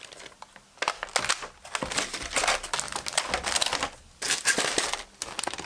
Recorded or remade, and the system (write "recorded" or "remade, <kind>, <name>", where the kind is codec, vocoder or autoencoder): recorded